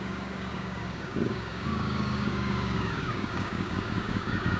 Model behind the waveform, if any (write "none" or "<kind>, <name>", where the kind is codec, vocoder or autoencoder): codec, DAC